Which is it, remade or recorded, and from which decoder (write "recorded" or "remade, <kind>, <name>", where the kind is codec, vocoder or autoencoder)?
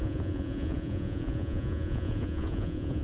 remade, vocoder, Vocos